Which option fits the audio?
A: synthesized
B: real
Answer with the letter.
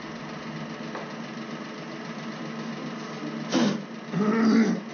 B